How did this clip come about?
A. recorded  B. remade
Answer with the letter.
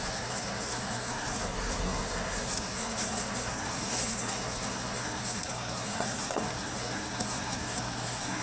B